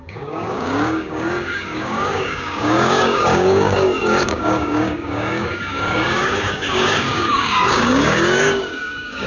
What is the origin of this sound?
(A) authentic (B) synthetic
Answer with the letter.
B